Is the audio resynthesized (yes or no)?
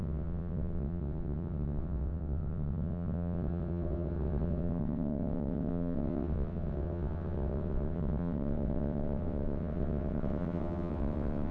yes